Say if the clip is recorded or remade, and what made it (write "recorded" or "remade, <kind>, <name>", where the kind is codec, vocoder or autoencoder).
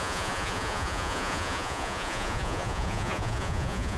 remade, vocoder, Vocos